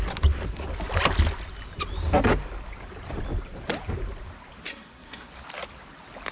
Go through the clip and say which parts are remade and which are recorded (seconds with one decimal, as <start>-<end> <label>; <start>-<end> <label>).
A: 0.0-4.7 recorded; 4.7-5.3 remade; 5.3-6.3 recorded